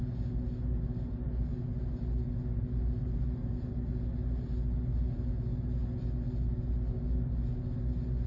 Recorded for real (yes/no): yes